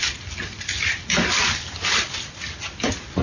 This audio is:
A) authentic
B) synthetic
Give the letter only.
A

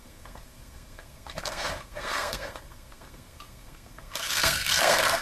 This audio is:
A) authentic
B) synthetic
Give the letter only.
B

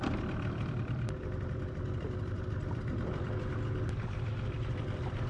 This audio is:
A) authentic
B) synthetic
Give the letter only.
B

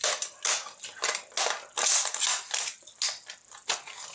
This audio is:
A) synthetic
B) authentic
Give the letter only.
B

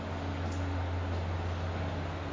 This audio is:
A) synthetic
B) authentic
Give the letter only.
B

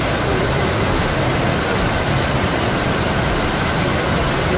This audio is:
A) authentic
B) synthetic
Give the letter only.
A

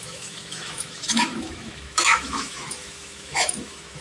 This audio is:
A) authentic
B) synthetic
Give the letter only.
B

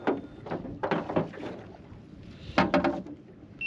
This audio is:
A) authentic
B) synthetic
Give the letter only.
A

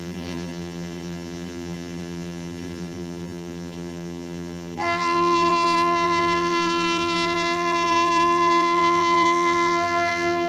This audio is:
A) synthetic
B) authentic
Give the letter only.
A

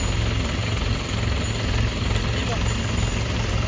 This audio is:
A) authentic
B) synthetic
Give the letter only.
A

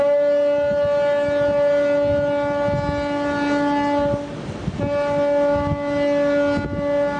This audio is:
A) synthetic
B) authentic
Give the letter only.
B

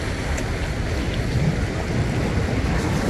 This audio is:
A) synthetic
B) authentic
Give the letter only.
B